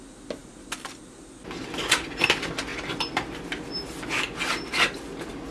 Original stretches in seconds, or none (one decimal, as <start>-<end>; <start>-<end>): 0.0-5.5